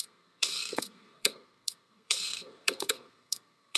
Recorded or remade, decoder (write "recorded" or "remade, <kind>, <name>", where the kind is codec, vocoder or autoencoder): remade, codec, SNAC